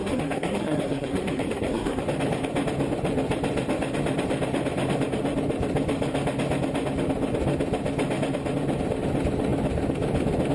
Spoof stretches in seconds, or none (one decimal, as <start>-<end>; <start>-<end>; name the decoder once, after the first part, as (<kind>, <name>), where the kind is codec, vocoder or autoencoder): 0.0-2.0 (codec, SNAC)